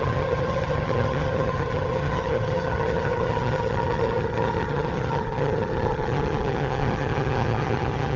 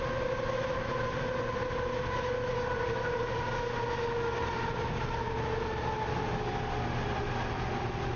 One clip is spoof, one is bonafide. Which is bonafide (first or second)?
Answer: second